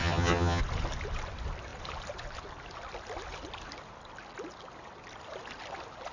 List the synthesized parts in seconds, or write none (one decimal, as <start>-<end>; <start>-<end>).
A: 0.0-0.6